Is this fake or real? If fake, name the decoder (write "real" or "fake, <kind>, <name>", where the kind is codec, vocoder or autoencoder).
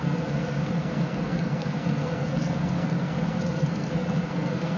fake, codec, SNAC